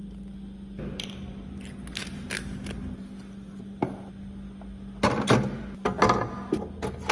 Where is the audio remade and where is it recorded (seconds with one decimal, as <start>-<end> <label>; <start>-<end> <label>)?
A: 0.0-7.1 recorded